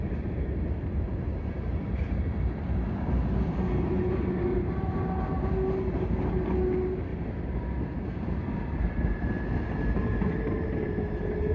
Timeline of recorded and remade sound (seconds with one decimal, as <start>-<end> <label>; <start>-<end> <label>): 0.0-4.5 recorded; 4.5-5.2 remade; 5.2-11.5 recorded